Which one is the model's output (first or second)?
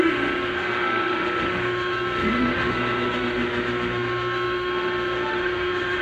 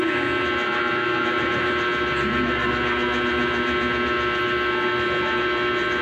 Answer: first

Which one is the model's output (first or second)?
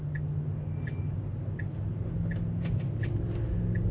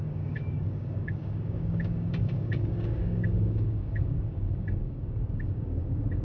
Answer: second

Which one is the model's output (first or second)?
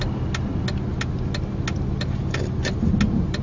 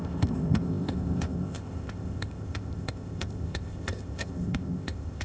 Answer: second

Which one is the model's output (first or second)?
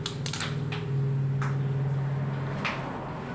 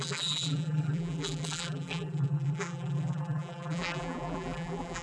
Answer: second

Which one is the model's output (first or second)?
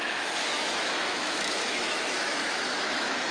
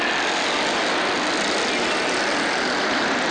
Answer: first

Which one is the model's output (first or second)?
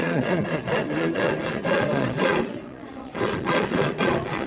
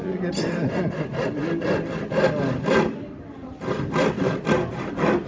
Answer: first